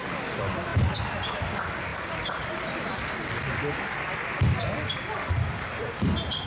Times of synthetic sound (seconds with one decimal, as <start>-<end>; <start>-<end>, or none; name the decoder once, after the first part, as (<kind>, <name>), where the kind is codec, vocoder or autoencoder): none